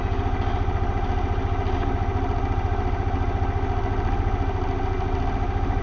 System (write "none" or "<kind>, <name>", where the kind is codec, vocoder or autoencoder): none